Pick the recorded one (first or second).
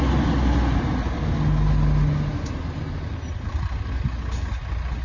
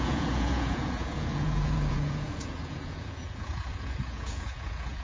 first